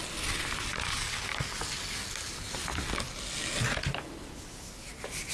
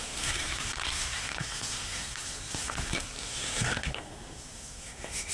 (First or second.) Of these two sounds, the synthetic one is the second